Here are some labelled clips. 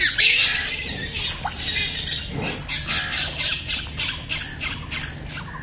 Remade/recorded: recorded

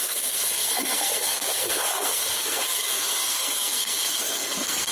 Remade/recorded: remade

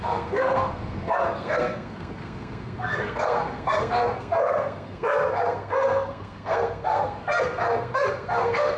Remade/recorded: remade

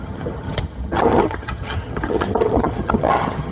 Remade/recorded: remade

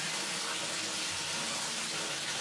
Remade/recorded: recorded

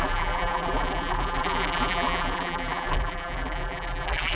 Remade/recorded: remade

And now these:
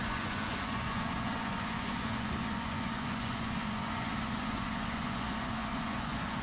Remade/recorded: remade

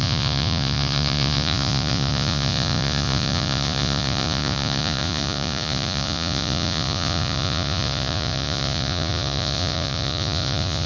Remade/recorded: remade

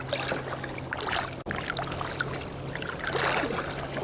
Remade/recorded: recorded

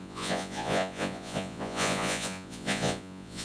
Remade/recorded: remade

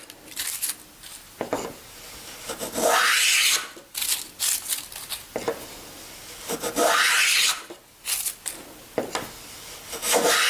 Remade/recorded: recorded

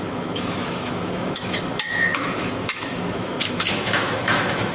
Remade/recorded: remade